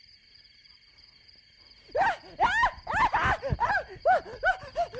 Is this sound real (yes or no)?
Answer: yes